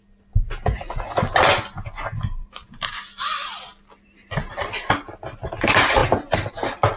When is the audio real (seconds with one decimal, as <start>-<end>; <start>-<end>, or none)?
0.0-7.0